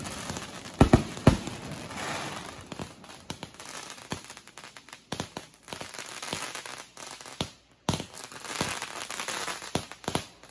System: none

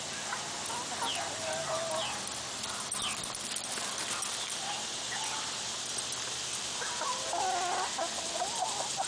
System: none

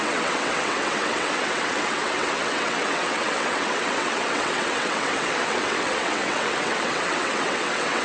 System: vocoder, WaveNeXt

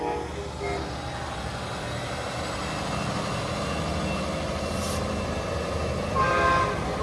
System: none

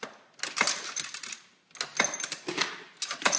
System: none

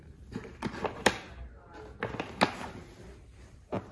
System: none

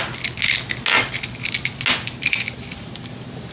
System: none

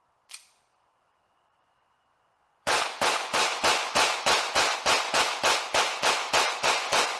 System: vocoder, Vocos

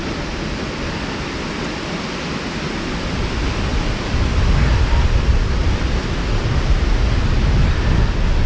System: none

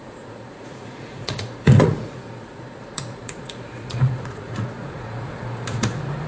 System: vocoder, Vocos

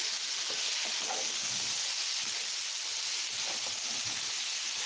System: vocoder, BigVGAN v2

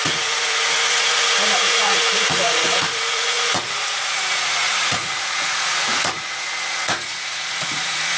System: vocoder, Vocos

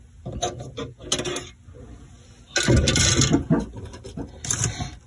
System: none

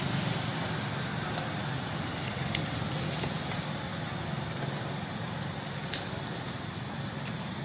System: none